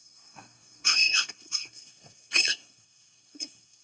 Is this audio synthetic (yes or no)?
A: yes